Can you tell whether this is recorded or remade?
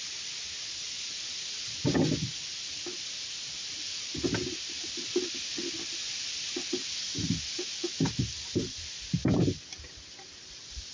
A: recorded